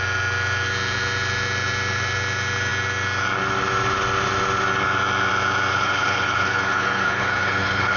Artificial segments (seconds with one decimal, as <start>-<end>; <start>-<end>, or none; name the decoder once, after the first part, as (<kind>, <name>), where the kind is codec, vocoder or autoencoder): 5.7-8.0 (codec, HILCodec)